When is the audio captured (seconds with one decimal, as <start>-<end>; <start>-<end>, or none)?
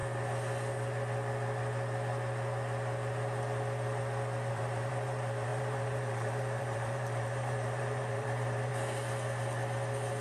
0.0-4.5; 8.7-10.2